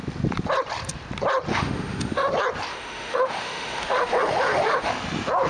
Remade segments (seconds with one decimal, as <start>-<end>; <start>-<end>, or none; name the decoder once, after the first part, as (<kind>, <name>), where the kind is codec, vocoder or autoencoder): 1.5-2.3 (autoencoder, DAC-VAE); 2.7-4.9